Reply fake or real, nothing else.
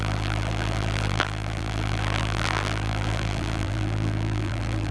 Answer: fake